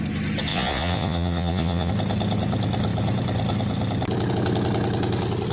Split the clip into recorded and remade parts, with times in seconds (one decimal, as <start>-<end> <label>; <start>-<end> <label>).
0.0-0.5 recorded; 0.5-1.9 remade; 1.9-5.5 recorded